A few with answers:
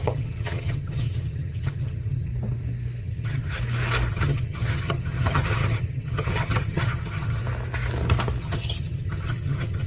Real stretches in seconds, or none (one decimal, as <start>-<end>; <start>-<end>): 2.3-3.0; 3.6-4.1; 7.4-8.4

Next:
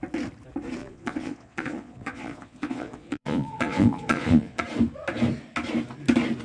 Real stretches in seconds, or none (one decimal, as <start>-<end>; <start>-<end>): 0.0-0.8; 4.6-6.4

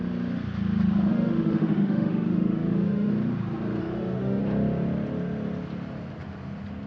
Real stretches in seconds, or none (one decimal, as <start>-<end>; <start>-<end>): 0.0-1.1; 3.1-3.8; 4.4-6.9

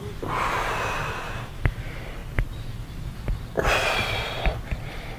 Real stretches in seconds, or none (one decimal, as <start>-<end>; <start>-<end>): 0.0-5.2

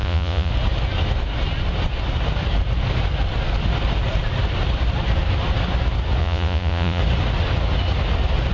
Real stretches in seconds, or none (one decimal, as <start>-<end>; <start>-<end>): 0.5-6.2; 7.0-8.5